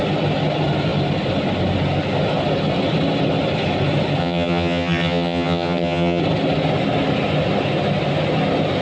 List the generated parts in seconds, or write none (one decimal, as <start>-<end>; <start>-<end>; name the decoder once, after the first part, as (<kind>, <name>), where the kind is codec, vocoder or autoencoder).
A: 4.2-6.2 (vocoder, HiFi-GAN)